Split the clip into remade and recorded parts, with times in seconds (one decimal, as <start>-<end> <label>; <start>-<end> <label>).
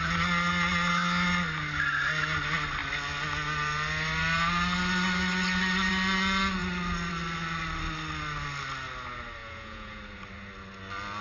0.0-9.4 recorded; 9.4-10.0 remade; 10.0-11.2 recorded